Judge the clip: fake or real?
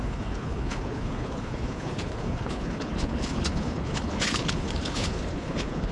fake